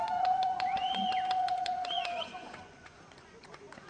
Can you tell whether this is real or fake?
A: fake